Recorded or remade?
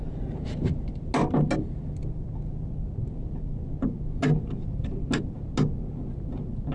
recorded